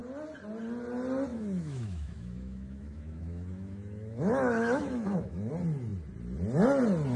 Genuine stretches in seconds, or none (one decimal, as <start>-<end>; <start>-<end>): 0.0-1.3; 5.5-7.2